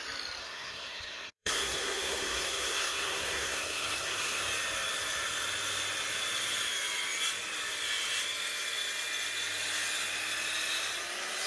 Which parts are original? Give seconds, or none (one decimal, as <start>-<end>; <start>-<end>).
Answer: 0.0-0.4; 4.4-11.5